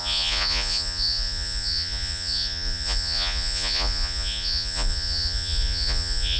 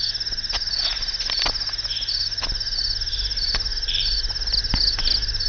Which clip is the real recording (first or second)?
second